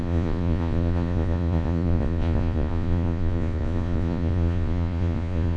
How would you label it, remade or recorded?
remade